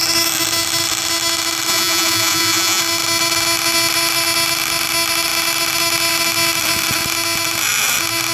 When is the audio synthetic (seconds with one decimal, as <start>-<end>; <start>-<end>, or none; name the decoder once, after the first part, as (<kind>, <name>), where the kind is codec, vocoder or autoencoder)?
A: 1.7-2.8 (vocoder, Vocos)

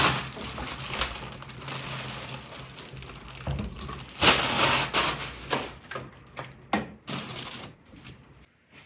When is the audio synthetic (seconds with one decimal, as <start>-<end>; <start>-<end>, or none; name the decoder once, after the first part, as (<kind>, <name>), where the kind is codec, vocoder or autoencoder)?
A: 7.3-8.0 (vocoder, Vocos)

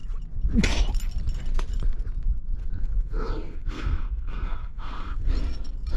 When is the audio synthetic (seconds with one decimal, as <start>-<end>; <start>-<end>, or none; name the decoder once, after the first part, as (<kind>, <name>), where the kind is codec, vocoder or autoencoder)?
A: 2.6-5.3 (codec, SNAC)

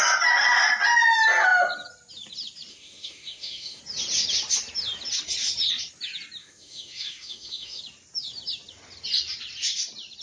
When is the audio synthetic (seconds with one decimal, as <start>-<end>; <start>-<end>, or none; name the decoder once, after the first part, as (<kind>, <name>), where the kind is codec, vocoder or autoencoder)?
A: 2.7-3.8 (autoencoder, DAC-VAE); 6.4-7.8

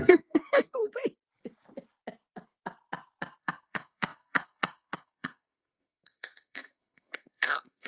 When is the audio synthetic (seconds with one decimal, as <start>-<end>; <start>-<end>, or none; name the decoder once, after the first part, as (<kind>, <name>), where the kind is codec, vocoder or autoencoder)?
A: 0.0-0.8 (codec, SNAC); 3.4-7.9

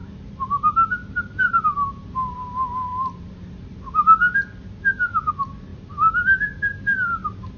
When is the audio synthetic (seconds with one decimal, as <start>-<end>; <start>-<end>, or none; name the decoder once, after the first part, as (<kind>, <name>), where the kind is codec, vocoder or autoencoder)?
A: 0.0-1.6 (vocoder, BigVGAN v2); 5.7-6.6

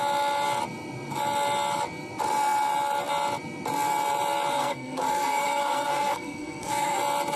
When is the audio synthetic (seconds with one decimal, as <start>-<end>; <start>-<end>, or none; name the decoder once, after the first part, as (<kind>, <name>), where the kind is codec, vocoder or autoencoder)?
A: 4.5-7.0 (codec, SNAC)